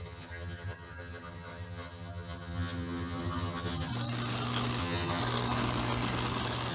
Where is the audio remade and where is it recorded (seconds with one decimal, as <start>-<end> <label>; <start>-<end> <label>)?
0.0-3.9 remade; 3.9-4.8 recorded; 4.8-5.2 remade; 5.2-6.7 recorded